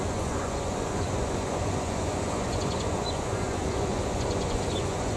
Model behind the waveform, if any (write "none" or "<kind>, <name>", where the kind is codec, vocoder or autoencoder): vocoder, Vocos